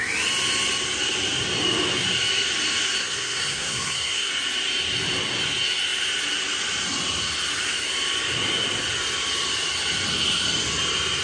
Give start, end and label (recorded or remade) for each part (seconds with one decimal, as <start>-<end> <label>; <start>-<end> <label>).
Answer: 0.0-3.0 recorded; 3.0-4.3 remade; 4.3-11.2 recorded